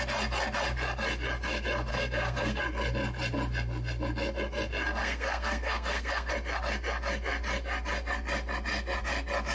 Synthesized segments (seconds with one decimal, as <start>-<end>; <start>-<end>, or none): 1.9-2.6; 5.0-6.3